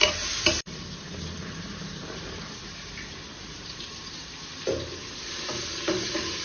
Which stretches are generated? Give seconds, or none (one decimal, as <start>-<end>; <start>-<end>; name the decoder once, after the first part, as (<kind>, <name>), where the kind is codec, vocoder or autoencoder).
0.5-4.3 (vocoder, BigVGAN v2)